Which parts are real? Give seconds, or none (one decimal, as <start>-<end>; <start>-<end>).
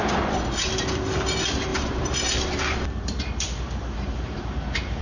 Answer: 0.0-1.7